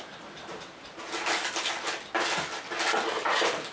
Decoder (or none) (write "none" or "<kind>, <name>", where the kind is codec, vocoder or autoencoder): none